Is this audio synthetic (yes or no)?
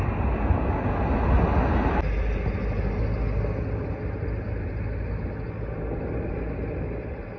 no